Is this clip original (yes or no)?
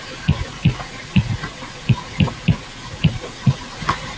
no